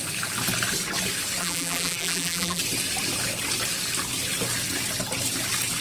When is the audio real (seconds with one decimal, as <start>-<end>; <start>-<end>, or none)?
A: 0.0-1.4; 2.6-5.8